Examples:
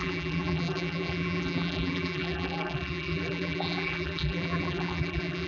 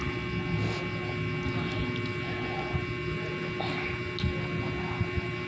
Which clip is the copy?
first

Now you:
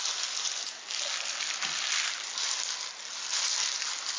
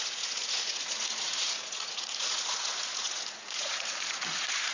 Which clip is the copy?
second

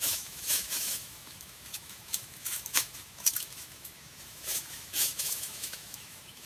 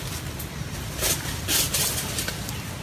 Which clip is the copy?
first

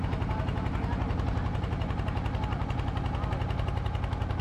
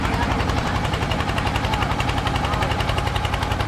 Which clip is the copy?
second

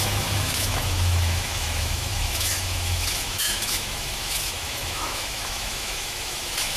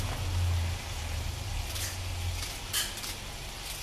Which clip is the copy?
first